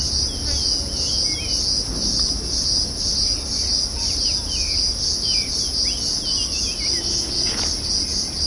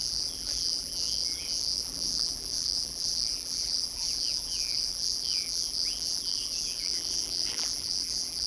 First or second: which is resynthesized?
second